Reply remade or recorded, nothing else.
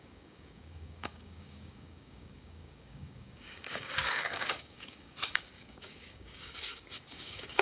remade